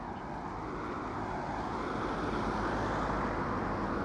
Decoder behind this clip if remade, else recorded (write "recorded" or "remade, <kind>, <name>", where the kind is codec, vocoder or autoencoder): recorded